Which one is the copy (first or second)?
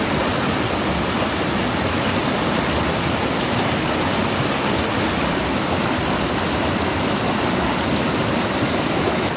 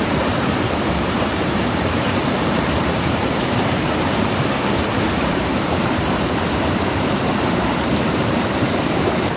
second